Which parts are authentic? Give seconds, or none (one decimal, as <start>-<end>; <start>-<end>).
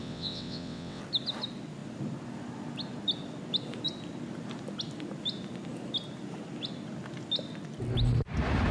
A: 1.0-8.7